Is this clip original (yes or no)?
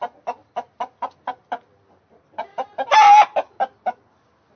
yes